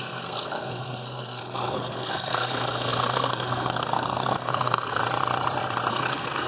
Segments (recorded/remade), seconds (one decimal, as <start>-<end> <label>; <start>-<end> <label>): 0.0-5.0 remade; 5.0-5.9 recorded; 5.9-6.5 remade